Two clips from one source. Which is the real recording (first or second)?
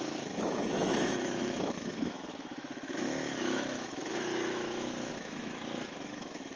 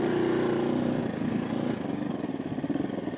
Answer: second